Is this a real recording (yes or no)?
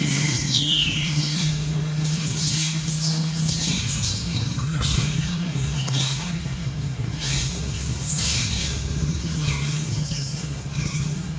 no